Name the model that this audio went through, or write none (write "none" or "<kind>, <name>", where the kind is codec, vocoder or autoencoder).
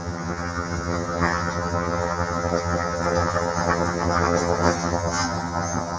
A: vocoder, HiFi-GAN